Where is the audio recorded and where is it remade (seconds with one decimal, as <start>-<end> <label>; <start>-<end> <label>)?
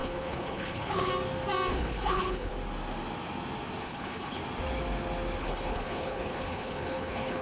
0.0-1.1 remade; 1.1-1.7 recorded; 1.7-2.5 remade; 2.5-3.8 recorded; 3.8-4.4 remade; 4.4-5.4 recorded; 5.4-7.4 remade